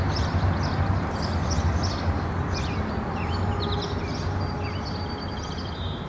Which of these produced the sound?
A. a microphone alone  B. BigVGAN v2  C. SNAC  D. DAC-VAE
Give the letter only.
A